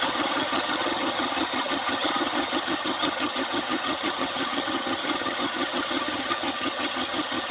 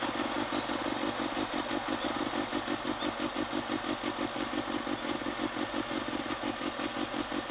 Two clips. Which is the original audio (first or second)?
second